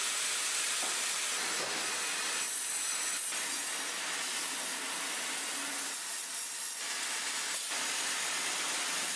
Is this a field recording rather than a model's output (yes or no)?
yes